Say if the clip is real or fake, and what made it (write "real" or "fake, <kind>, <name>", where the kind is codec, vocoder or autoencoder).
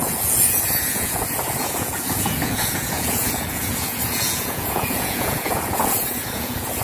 fake, vocoder, Vocos